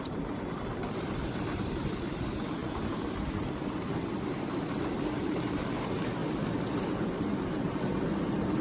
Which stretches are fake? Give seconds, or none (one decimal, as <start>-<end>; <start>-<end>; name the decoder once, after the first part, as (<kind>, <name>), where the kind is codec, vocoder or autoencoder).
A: 0.0-6.2 (vocoder, BigVGAN v2); 6.8-8.6